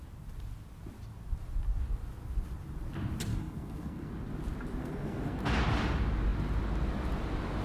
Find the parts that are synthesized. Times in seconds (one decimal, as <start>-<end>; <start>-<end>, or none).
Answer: 3.3-4.1; 4.8-5.4